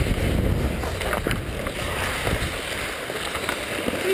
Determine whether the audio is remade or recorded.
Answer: recorded